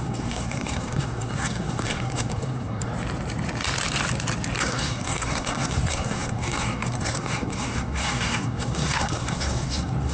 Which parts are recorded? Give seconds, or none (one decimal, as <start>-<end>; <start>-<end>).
2.9-4.6